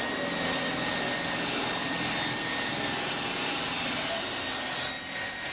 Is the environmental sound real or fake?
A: real